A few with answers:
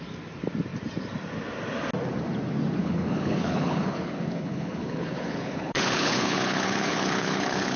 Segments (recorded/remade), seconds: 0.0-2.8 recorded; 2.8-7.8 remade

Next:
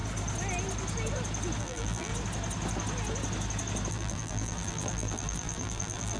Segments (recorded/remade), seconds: 0.0-1.6 recorded; 1.6-2.1 remade; 2.1-3.9 recorded; 3.9-6.2 remade

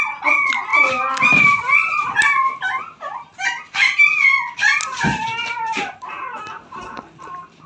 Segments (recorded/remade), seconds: 0.0-7.7 recorded

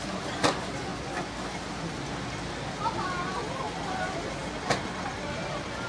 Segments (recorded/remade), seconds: 0.0-5.9 recorded

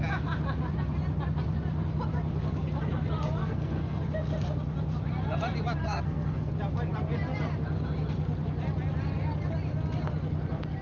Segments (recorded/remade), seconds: 0.0-3.4 recorded; 3.4-4.0 remade; 4.0-5.8 recorded; 5.8-6.5 remade; 6.5-10.8 recorded

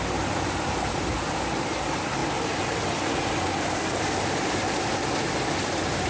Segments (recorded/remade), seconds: 0.0-6.1 recorded

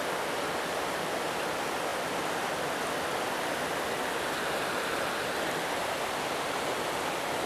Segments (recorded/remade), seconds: 0.0-7.5 recorded

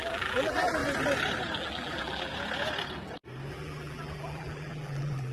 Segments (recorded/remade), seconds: 0.0-0.8 remade; 0.8-1.6 recorded; 1.6-2.3 remade; 2.3-3.5 recorded; 3.5-5.3 remade